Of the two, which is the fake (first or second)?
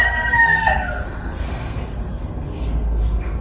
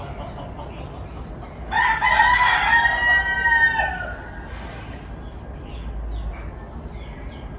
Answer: first